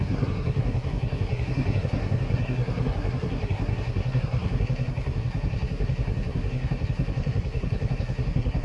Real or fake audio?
fake